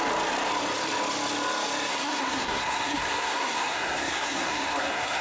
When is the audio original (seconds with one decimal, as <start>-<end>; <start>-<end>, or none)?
0.0-1.9